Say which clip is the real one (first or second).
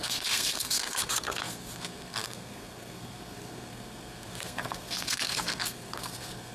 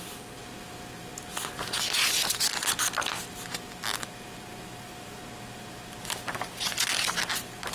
second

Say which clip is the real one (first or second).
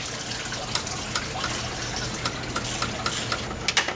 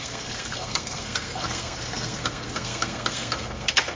first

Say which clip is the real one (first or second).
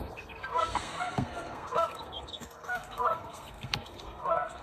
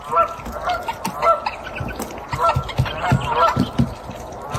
second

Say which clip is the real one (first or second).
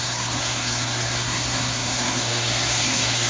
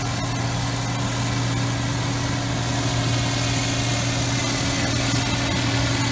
second